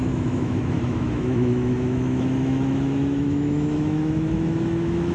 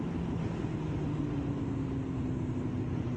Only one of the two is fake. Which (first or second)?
first